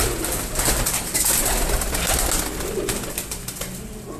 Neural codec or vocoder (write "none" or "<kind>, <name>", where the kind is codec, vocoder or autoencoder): none